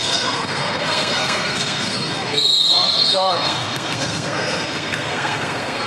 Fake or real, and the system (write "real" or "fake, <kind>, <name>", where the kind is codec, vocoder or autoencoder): fake, codec, SNAC